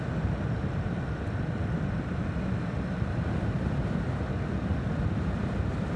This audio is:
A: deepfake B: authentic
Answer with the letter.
B